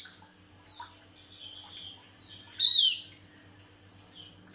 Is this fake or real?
real